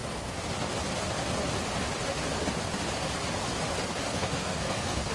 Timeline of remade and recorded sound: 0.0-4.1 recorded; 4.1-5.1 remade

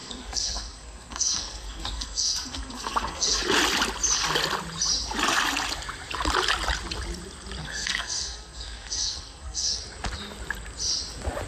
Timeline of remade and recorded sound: 0.0-3.4 remade; 3.4-7.6 recorded; 7.6-9.8 remade; 9.8-11.5 recorded

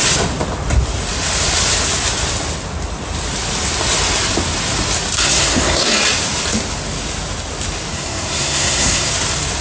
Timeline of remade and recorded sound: 0.0-5.2 recorded; 5.2-5.9 remade; 5.9-7.9 recorded; 7.9-9.1 remade; 9.1-9.6 recorded

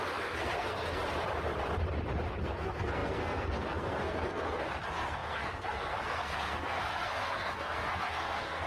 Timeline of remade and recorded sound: 0.0-1.0 remade; 1.0-2.4 recorded; 2.4-8.7 remade